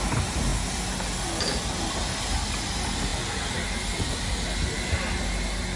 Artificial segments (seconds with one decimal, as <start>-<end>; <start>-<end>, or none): none